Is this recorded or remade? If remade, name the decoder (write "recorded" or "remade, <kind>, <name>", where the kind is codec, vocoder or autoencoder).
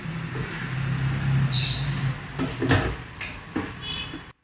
recorded